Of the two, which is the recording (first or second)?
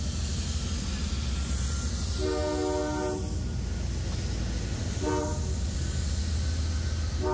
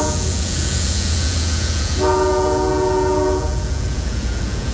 first